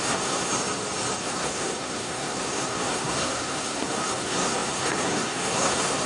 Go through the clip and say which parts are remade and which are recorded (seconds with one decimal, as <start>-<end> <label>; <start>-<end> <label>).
0.0-0.5 remade; 0.5-1.2 recorded; 1.2-6.1 remade